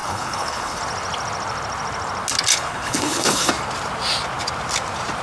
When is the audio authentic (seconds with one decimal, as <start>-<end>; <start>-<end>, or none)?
0.8-2.5; 3.5-5.2